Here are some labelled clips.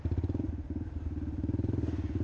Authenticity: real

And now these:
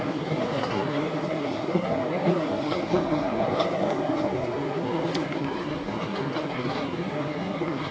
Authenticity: fake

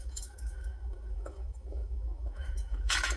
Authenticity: fake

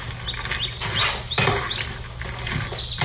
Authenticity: real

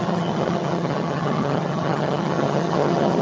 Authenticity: fake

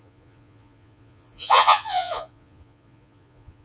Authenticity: fake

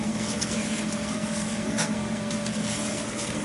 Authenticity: fake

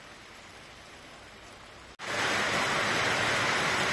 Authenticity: real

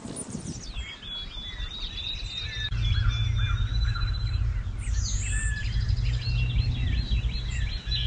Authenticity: real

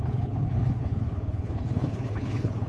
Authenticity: fake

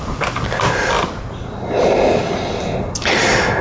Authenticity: real